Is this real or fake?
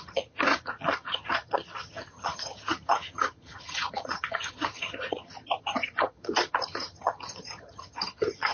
fake